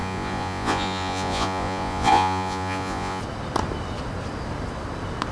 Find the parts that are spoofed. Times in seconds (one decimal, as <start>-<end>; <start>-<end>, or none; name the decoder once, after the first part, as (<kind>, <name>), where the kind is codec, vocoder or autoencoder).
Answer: 0.0-3.2 (vocoder, Vocos)